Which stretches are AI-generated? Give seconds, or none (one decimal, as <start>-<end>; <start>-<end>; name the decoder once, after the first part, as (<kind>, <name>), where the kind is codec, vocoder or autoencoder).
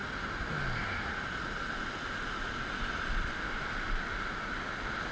none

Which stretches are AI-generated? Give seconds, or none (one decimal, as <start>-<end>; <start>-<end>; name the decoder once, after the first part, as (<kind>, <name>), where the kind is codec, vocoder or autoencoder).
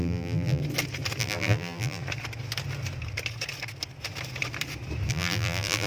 0.0-0.6 (vocoder, BigVGAN v2); 1.2-2.0; 5.1-5.9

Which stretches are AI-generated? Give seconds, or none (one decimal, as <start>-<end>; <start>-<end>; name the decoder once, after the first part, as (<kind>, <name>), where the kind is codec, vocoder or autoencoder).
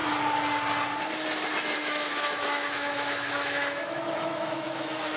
1.8-5.2 (autoencoder, DAC-VAE)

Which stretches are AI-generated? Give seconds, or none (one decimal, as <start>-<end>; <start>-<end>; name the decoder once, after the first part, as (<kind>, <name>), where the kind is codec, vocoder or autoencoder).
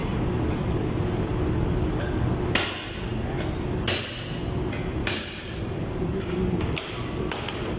5.0-6.2 (vocoder, BigVGAN v2)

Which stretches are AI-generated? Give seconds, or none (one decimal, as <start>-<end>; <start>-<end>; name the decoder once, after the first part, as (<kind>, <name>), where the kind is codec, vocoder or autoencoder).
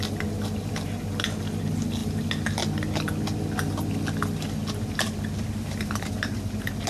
none